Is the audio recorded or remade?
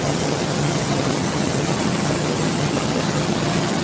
remade